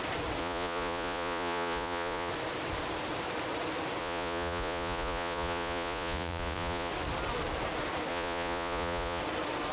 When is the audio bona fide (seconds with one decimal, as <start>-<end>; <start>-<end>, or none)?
0.0-0.4; 2.3-4.0; 6.9-8.1; 9.2-9.7